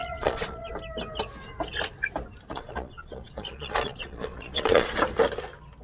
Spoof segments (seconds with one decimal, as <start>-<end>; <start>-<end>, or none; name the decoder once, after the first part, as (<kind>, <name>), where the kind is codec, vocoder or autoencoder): 0.0-0.7 (vocoder, Vocos); 2.5-4.9